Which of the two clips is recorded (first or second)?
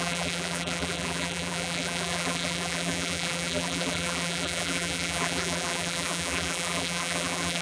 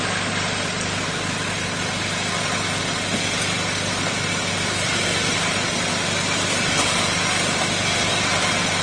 second